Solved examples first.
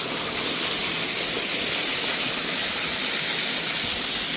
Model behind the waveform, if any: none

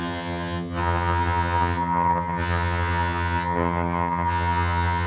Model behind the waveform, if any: vocoder, HiFi-GAN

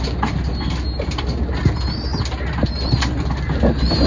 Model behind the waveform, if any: none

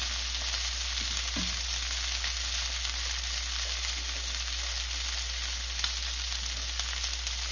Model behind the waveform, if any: none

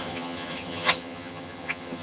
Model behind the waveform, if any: vocoder, HiFi-GAN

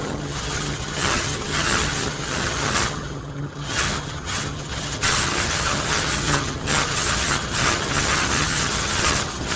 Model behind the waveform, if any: vocoder, HiFi-GAN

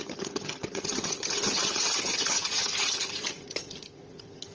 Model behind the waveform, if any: vocoder, HiFi-GAN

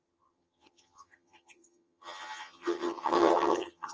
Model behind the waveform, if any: vocoder, HiFi-GAN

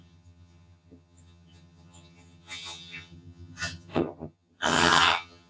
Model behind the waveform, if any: vocoder, HiFi-GAN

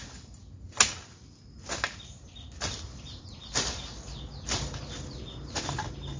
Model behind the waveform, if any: none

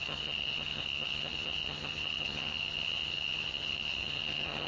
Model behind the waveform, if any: vocoder, HiFi-GAN